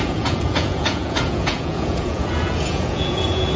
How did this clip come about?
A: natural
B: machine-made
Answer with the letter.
B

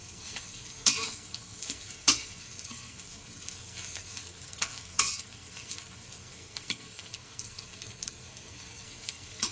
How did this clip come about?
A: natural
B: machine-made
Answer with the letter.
B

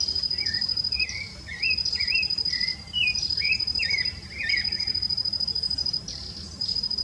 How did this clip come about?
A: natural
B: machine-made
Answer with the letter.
A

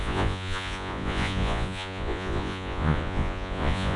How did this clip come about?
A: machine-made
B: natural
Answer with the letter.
A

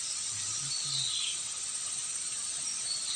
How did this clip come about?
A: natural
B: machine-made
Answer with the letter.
A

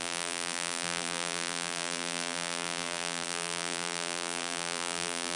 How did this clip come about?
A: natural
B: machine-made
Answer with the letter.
B